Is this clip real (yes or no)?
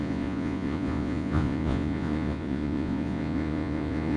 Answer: no